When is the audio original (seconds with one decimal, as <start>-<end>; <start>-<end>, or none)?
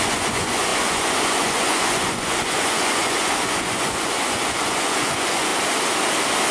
5.5-6.5